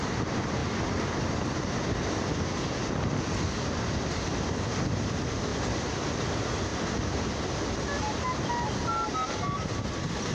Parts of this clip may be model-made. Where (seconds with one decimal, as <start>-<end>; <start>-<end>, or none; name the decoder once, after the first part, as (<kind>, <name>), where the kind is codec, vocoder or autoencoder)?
0.0-0.6 (vocoder, BigVGAN v2); 4.7-6.7; 9.8-10.3